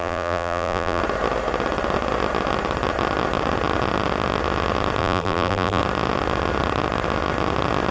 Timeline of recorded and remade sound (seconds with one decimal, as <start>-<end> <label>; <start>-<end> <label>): 0.0-1.0 remade; 1.0-5.0 recorded; 5.0-5.8 remade; 5.8-7.9 recorded